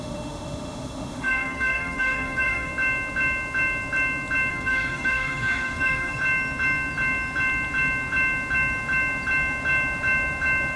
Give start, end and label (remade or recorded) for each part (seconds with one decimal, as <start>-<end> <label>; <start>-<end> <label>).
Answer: 0.0-2.7 remade; 2.7-4.5 recorded; 4.5-6.2 remade; 6.2-10.8 recorded